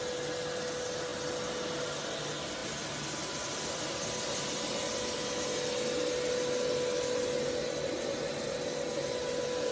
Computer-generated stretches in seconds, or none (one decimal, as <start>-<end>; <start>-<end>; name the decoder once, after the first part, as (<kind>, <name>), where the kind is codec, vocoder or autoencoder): none